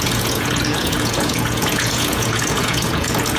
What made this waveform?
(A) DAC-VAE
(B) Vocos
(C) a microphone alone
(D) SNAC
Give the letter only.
B